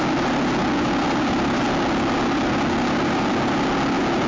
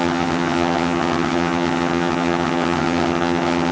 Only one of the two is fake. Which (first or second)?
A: second